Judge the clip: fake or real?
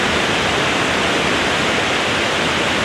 real